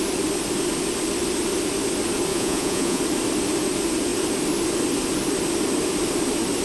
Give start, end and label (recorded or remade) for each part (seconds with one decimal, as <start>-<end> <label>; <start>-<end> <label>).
0.0-2.3 recorded; 2.3-3.0 remade; 3.0-6.6 recorded